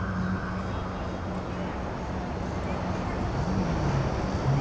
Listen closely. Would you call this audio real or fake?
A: real